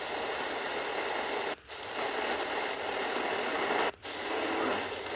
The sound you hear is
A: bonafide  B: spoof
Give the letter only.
A